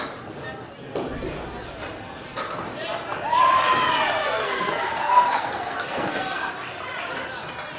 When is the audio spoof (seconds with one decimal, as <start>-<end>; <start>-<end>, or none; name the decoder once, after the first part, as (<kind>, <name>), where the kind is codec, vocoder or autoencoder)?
4.2-6.5 (codec, SNAC)